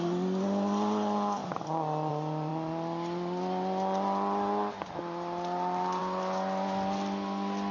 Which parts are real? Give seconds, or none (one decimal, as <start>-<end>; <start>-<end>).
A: 0.0-7.7

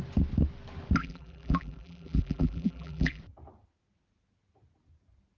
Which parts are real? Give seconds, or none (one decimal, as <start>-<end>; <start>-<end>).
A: 0.0-1.0; 3.2-5.4

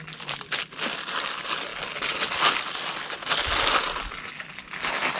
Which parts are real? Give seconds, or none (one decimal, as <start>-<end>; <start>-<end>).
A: 0.0-5.2